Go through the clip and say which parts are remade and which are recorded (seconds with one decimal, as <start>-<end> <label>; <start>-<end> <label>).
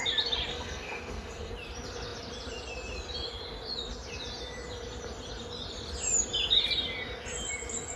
0.0-0.5 recorded; 0.5-1.5 remade; 1.5-8.0 recorded